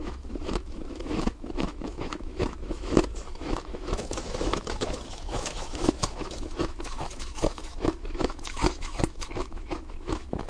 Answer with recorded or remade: remade